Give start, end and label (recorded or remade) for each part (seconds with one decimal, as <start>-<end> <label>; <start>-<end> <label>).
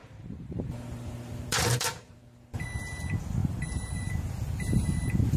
0.0-2.2 remade; 2.2-3.4 recorded; 3.4-4.1 remade; 4.1-5.4 recorded